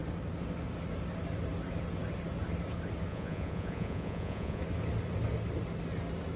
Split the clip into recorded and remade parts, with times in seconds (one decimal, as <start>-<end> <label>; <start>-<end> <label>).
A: 0.0-3.1 recorded; 3.1-4.6 remade; 4.6-6.4 recorded